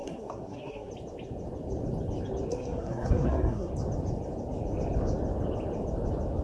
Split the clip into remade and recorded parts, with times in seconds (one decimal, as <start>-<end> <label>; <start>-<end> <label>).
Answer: 0.0-0.9 remade; 0.9-2.5 recorded; 2.5-3.7 remade; 3.7-6.4 recorded